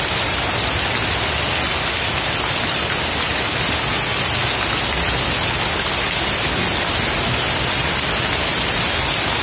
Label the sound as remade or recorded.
recorded